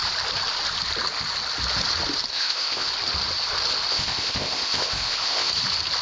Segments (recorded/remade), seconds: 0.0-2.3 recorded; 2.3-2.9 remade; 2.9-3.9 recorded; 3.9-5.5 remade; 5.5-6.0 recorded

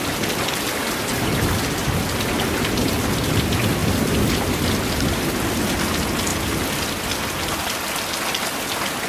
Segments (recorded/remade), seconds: 0.0-9.1 recorded

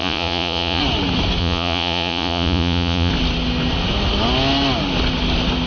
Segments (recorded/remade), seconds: 0.0-0.8 remade; 0.8-1.4 recorded; 1.4-3.1 remade; 3.1-5.7 recorded